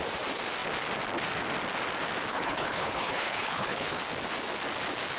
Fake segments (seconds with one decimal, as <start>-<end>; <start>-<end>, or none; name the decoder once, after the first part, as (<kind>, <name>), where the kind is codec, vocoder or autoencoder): 2.3-4.0 (codec, HILCodec)